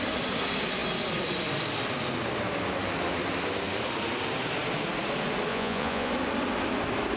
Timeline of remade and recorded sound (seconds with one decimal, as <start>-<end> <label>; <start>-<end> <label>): 0.0-5.5 recorded; 5.5-6.1 remade; 6.1-7.2 recorded